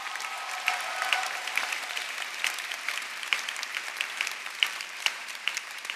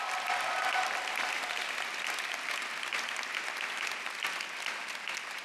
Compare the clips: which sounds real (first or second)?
second